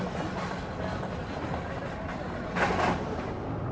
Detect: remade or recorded recorded